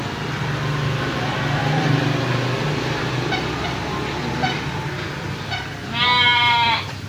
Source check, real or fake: real